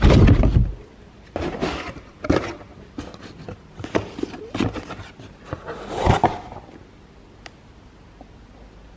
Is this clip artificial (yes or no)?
no